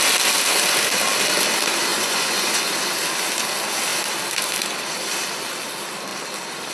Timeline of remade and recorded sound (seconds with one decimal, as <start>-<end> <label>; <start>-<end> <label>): 0.0-1.9 recorded; 1.9-2.7 remade; 2.7-6.7 recorded